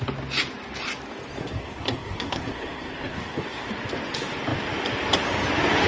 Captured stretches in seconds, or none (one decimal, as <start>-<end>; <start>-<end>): 0.0-1.4; 3.7-5.9